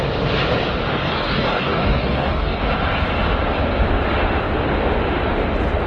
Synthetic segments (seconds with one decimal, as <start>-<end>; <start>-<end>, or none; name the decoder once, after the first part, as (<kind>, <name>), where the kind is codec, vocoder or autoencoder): 0.9-2.6 (codec, DAC)